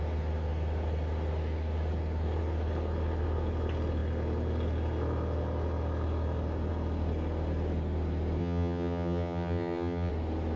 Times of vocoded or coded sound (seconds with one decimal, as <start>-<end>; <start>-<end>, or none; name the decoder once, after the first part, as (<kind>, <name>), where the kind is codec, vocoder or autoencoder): 8.4-10.1 (vocoder, HiFi-GAN)